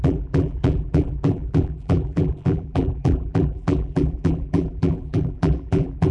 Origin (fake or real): fake